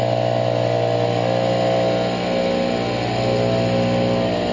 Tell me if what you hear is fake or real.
real